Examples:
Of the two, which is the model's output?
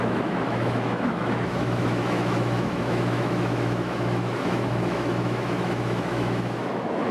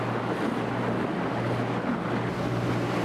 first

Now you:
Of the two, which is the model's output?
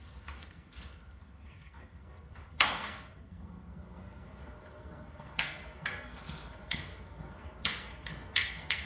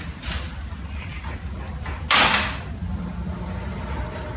first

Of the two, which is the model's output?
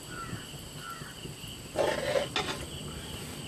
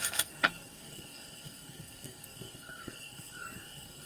second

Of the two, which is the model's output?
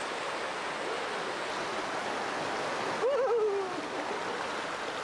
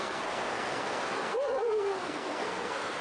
second